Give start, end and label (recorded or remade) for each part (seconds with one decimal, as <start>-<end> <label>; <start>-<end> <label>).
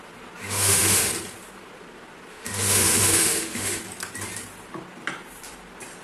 0.0-0.4 recorded; 0.4-1.1 remade; 1.1-2.3 recorded; 2.3-3.8 remade; 3.8-6.0 recorded